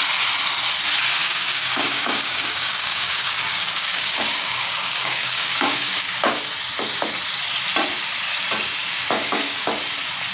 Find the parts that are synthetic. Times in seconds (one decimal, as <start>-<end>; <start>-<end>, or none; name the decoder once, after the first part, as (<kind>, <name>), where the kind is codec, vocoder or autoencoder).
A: 1.2-6.4 (codec, DAC); 8.8-9.7